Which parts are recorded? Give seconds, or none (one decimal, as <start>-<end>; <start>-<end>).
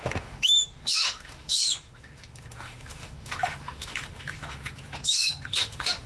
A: none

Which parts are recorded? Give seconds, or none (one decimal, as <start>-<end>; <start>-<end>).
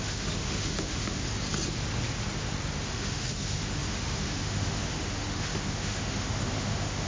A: 1.2-2.8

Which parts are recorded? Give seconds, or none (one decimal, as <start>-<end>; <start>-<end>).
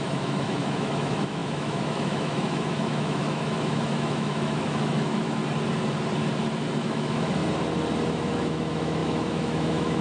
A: 5.4-6.8; 7.4-8.1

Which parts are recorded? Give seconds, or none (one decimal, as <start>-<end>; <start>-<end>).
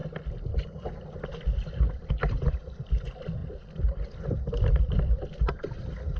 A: 0.0-6.2